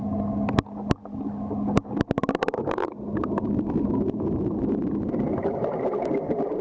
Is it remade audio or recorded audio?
recorded